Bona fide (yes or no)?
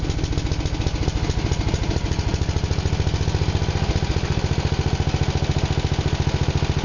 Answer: yes